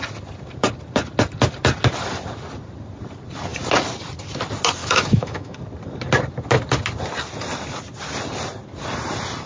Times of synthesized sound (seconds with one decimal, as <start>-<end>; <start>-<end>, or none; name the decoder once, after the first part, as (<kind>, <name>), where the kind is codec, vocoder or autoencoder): 4.8-5.6 (autoencoder, DAC-VAE)